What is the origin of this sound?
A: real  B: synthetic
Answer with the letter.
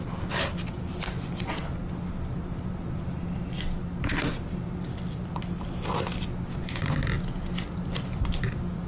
A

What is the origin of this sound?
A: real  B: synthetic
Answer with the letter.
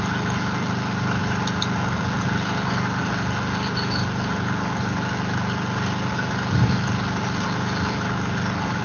A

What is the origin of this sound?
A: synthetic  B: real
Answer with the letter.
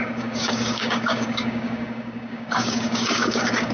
A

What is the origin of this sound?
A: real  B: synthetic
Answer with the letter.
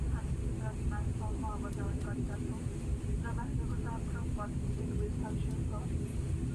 B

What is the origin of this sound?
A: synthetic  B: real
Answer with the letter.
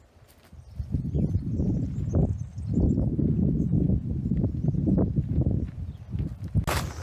B